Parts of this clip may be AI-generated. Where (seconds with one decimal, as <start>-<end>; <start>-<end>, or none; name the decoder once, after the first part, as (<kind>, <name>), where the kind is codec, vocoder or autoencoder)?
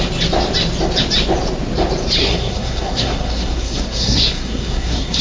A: 2.2-5.2 (codec, SNAC)